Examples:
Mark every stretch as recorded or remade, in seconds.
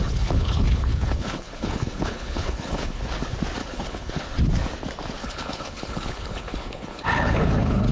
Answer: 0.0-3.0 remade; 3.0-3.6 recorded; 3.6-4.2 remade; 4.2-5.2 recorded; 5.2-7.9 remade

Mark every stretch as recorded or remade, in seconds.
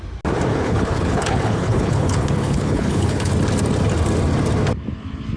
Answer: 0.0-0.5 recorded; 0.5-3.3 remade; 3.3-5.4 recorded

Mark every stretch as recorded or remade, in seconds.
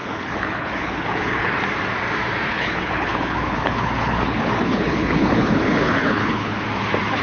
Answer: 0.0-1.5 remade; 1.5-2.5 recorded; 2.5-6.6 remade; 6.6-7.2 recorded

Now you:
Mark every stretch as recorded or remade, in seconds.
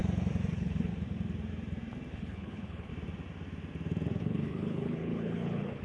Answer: 0.0-0.5 recorded; 0.5-0.9 remade; 0.9-2.1 recorded; 2.1-2.9 remade; 2.9-4.2 recorded; 4.2-5.8 remade